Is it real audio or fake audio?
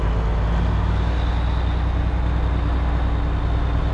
real